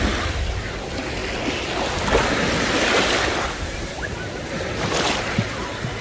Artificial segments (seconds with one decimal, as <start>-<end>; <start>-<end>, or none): none